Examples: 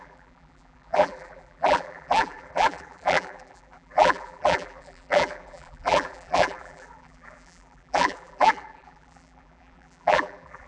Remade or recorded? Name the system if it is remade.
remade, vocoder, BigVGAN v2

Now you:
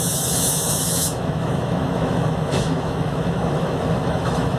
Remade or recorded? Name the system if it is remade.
remade, autoencoder, DAC-VAE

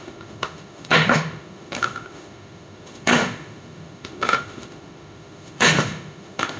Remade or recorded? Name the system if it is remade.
remade, autoencoder, DAC-VAE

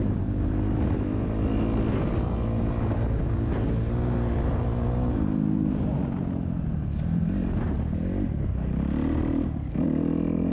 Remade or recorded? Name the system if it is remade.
recorded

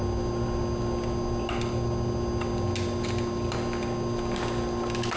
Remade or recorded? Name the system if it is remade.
recorded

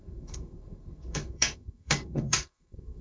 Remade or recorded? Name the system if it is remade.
remade, codec, SNAC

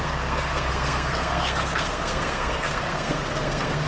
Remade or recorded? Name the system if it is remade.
remade, codec, SNAC